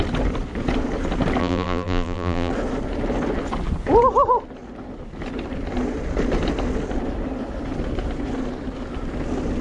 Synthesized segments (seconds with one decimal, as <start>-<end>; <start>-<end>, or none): 1.4-2.5